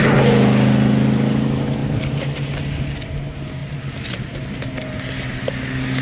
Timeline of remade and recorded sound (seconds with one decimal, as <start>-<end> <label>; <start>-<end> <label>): 0.0-1.8 recorded; 1.8-2.5 remade; 2.5-3.6 recorded; 3.6-5.1 remade; 5.1-6.0 recorded